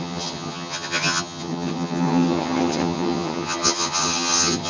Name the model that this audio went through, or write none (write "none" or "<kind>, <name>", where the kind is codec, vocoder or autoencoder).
vocoder, HiFi-GAN